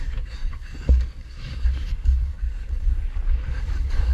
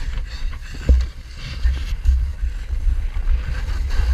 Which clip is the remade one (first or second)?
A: first